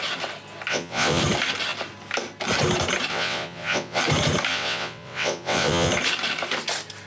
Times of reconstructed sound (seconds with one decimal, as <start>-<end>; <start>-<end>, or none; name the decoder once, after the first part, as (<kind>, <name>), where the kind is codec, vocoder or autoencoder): 0.7-1.2 (vocoder, WaveNeXt); 3.1-4.0; 4.5-5.9